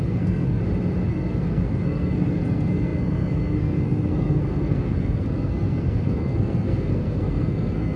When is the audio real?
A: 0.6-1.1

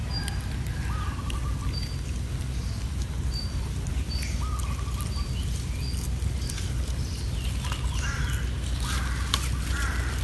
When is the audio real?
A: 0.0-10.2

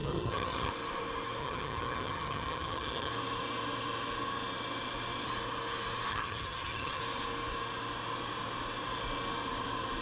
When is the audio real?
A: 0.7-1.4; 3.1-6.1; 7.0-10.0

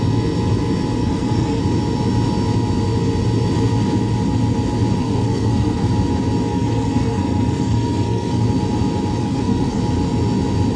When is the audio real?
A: 0.0-1.0; 1.6-5.0; 5.9-6.5; 8.4-9.2; 9.8-10.8